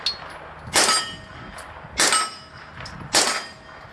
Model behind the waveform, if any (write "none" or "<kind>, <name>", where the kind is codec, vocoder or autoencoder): none